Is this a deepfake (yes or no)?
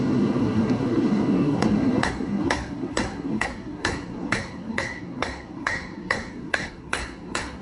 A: yes